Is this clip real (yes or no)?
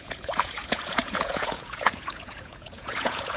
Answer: no